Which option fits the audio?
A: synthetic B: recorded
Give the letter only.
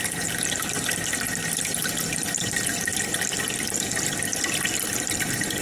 B